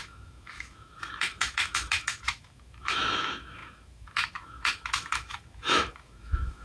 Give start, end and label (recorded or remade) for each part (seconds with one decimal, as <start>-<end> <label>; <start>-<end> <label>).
0.0-6.6 remade